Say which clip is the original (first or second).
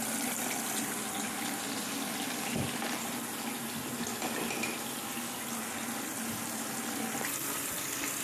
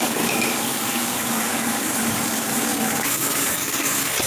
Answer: first